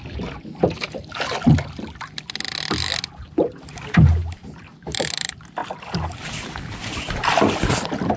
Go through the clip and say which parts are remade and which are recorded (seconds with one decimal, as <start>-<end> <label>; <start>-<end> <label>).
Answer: 0.0-8.2 recorded